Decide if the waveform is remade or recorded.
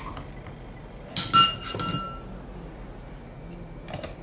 recorded